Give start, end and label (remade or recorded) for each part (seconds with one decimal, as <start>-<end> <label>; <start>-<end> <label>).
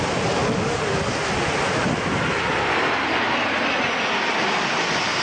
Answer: 0.0-5.2 recorded